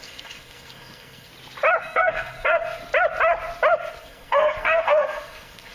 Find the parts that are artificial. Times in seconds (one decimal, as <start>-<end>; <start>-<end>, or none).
0.0-1.3; 1.8-2.8; 3.9-5.7